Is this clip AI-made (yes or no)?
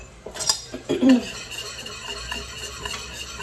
yes